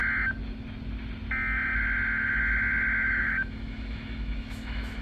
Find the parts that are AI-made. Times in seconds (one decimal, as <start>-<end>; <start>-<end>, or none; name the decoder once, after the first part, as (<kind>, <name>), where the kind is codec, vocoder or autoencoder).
3.0-5.0 (autoencoder, DAC-VAE)